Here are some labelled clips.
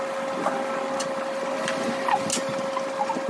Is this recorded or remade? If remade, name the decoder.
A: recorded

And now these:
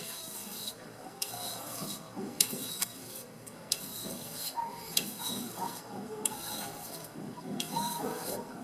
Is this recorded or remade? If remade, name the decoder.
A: remade, codec, SNAC